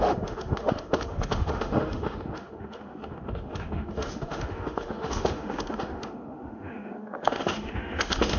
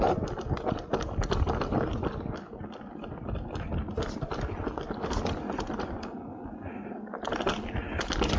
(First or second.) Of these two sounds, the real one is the second